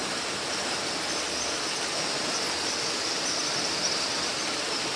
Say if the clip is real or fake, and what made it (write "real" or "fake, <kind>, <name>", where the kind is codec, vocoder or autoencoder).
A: real